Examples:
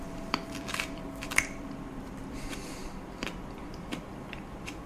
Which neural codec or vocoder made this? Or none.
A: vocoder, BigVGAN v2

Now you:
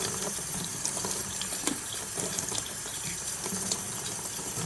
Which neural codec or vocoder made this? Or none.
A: vocoder, BigVGAN v2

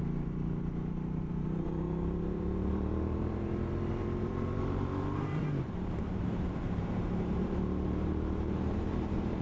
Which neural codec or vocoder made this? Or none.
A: vocoder, BigVGAN v2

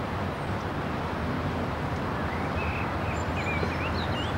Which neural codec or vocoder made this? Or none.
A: none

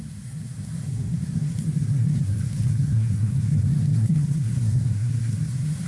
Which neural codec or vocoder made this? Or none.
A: codec, SNAC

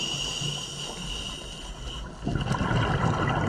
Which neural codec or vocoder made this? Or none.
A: none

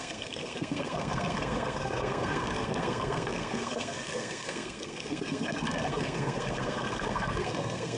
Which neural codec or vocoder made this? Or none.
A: codec, SNAC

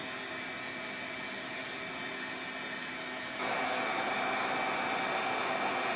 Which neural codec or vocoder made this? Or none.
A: none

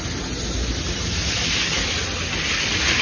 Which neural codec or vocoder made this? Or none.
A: none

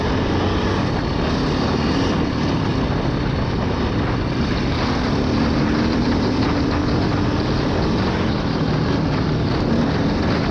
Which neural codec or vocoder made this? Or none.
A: none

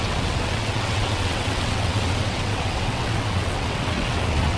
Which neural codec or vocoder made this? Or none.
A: vocoder, WaveNeXt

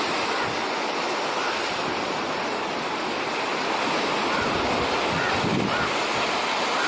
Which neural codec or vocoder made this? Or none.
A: none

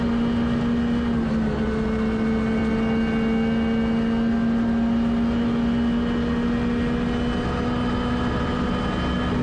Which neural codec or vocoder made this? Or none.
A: none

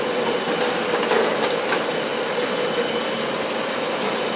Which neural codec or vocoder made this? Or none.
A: none